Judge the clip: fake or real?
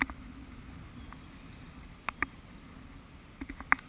real